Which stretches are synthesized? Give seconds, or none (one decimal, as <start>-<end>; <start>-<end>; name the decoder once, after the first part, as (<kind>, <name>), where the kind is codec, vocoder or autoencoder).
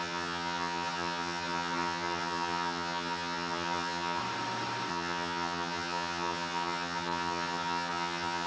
0.0-4.2 (vocoder, HiFi-GAN); 4.9-8.5